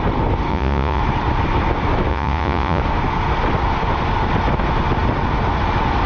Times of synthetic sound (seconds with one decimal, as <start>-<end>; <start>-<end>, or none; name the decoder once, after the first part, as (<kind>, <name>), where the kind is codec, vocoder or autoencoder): 0.5-1.0 (vocoder, Vocos); 2.1-2.8